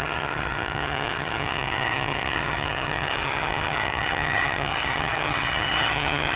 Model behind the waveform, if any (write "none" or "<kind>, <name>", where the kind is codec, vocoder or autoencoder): vocoder, HiFi-GAN